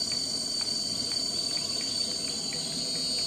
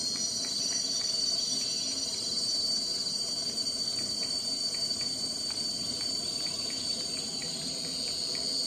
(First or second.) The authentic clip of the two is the first